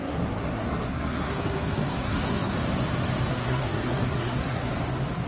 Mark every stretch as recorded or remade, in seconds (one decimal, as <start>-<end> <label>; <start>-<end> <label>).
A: 0.0-2.5 remade; 2.5-3.3 recorded; 3.3-4.7 remade; 4.7-5.3 recorded